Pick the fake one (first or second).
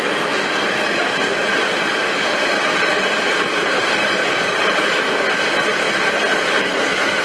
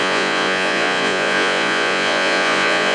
second